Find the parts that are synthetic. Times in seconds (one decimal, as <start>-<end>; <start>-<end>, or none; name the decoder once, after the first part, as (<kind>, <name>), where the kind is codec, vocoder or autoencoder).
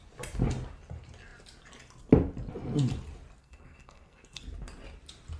3.4-4.4 (codec, SNAC)